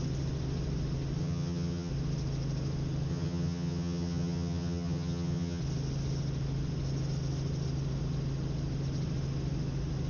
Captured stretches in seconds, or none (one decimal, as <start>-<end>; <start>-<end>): 0.0-1.2; 1.9-3.1; 5.6-10.1